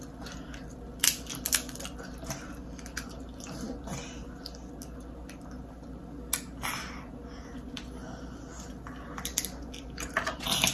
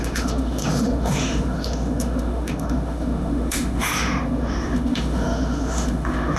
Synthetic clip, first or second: second